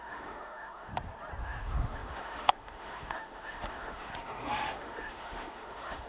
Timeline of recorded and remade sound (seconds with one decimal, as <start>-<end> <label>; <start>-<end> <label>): 0.0-0.9 remade; 0.9-1.4 recorded; 1.4-6.1 remade